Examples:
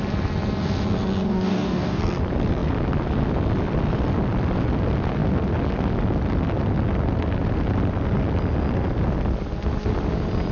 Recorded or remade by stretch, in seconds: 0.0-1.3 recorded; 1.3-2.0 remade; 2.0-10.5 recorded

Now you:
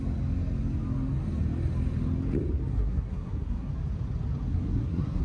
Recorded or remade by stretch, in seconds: 0.0-2.7 recorded; 2.7-3.7 remade; 3.7-4.5 recorded; 4.5-5.2 remade

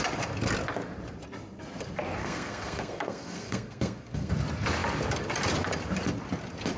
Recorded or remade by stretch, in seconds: 0.0-2.2 recorded; 2.2-4.3 remade; 4.3-6.8 recorded